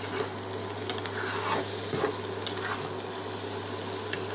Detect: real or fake real